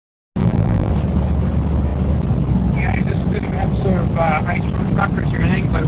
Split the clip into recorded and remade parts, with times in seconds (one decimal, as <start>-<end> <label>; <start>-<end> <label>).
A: 0.0-0.4 recorded; 0.4-0.9 remade; 0.9-5.9 recorded